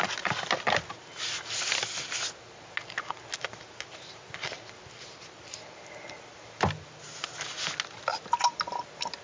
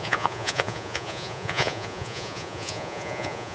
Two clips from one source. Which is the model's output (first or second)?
second